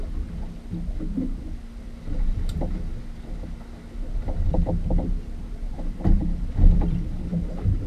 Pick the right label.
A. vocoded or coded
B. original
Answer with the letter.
B